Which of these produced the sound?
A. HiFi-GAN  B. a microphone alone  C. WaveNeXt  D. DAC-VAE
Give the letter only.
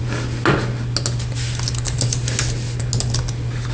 B